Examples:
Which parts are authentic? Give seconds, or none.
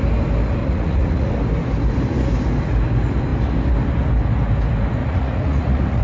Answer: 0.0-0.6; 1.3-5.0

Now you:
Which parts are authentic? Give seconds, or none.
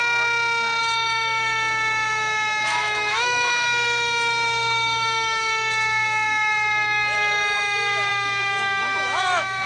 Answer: 0.0-0.8